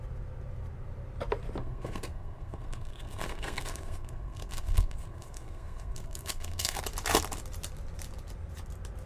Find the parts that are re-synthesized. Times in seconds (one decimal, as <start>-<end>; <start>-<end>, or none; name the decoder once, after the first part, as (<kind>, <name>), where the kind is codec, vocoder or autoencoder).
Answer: 1.6-6.8 (codec, SNAC)